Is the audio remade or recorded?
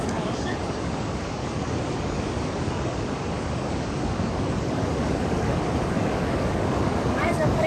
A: remade